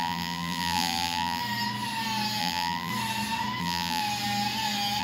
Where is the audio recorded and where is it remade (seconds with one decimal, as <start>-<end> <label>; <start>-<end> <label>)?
0.0-1.4 remade; 1.4-2.4 recorded; 2.4-2.9 remade; 2.9-3.6 recorded; 3.6-4.0 remade; 4.0-5.0 recorded